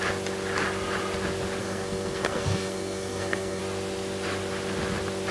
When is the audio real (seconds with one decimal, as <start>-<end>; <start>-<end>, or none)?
0.0-1.6; 3.6-5.3

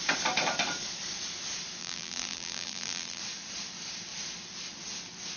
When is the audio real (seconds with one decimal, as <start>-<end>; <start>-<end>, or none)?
0.0-1.8; 3.2-5.4

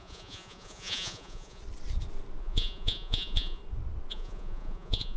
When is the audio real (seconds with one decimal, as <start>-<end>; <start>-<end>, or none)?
1.6-2.4; 3.6-4.1

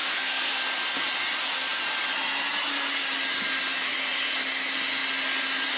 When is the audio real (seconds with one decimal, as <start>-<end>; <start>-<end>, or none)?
0.6-5.8

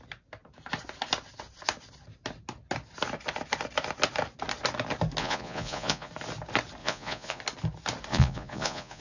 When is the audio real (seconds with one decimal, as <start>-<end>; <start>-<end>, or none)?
0.0-5.2; 6.1-6.8; 7.4-8.1

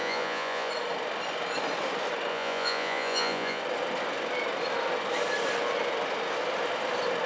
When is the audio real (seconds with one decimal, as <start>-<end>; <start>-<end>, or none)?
0.7-2.3; 3.6-7.3